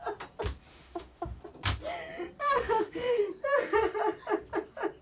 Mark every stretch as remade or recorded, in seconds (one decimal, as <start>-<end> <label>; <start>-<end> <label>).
0.0-0.7 recorded; 0.7-1.4 remade; 1.4-2.4 recorded; 2.4-3.2 remade; 3.2-5.0 recorded